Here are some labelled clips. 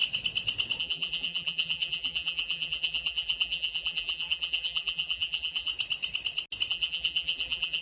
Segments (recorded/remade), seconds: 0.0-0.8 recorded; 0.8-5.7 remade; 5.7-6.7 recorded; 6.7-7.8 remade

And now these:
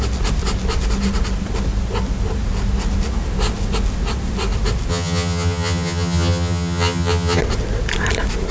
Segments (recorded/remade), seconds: 0.0-4.9 recorded; 4.9-7.4 remade; 7.4-8.5 recorded